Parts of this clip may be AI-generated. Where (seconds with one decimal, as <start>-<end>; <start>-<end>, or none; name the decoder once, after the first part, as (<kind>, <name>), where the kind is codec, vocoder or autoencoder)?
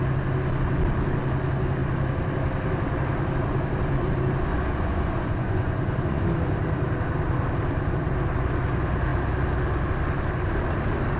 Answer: 4.5-6.2 (vocoder, Vocos)